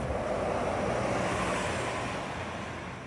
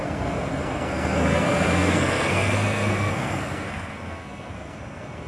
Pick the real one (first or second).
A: first